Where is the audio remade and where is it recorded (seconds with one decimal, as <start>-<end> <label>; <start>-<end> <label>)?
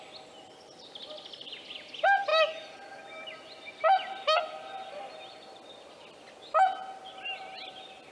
0.0-8.1 recorded